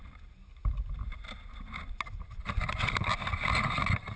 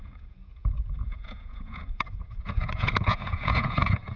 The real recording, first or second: first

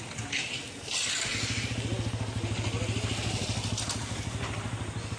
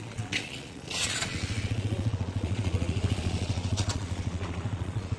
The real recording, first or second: first